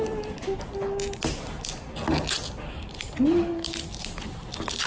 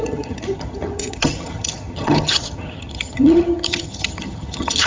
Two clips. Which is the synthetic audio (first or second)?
second